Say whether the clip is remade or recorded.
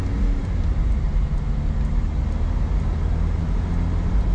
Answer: recorded